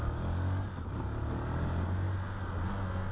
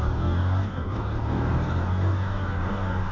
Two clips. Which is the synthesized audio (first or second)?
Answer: second